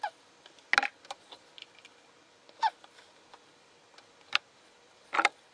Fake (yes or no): no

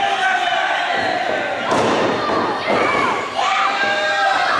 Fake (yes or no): no